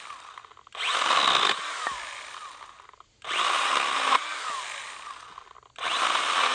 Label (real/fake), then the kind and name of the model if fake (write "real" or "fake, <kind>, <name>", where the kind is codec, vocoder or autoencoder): real